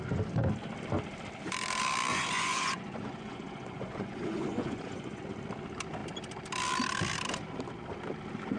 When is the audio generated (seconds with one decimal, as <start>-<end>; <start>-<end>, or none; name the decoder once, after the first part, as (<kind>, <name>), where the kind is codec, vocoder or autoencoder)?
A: 2.1-5.2 (vocoder, Vocos)